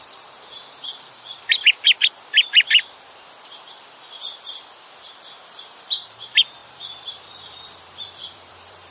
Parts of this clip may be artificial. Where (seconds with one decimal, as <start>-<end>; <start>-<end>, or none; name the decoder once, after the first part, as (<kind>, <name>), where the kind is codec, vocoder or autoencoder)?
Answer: 0.0-1.3 (vocoder, BigVGAN v2); 5.0-8.9